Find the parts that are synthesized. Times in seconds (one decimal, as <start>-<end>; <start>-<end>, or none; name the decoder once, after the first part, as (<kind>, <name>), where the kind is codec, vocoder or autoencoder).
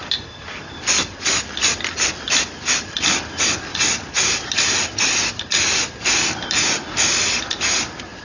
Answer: 3.7-4.9 (vocoder, BigVGAN v2)